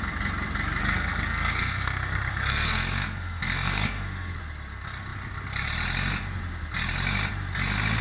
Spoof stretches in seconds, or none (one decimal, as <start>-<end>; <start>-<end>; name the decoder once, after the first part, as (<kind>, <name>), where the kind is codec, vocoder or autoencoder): 0.8-4.4 (codec, SNAC)